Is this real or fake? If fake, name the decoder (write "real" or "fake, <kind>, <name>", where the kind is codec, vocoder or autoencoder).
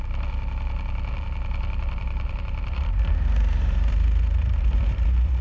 fake, vocoder, BigVGAN v2